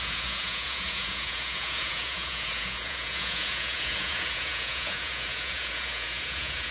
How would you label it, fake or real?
fake